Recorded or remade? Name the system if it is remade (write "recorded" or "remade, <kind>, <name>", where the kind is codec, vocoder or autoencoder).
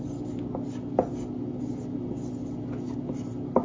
recorded